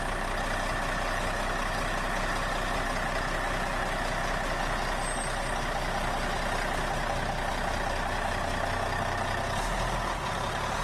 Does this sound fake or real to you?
real